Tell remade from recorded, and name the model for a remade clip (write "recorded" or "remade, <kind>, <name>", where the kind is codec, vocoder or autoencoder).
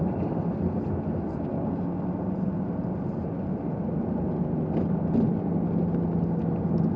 recorded